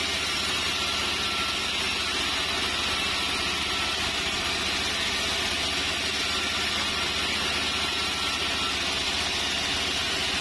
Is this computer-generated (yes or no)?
no